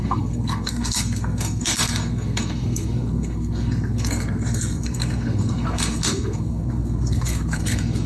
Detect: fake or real fake